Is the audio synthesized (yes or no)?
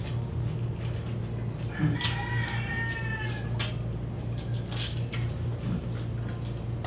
no